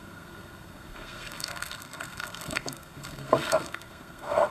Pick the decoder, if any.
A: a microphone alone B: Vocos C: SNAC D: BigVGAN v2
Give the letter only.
C